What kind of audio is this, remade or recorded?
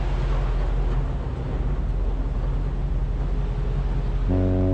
recorded